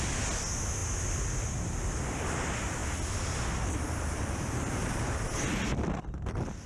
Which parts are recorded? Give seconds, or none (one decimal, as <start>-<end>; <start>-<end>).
0.0-6.7